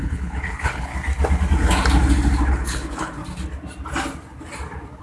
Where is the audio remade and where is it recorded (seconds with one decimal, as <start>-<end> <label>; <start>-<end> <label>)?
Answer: 0.0-0.9 remade; 0.9-2.5 recorded; 2.5-3.2 remade; 3.2-5.0 recorded